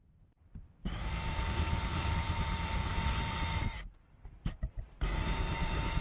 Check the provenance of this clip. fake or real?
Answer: fake